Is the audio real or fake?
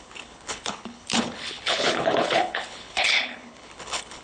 fake